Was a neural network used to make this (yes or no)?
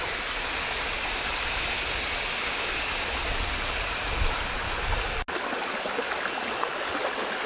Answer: no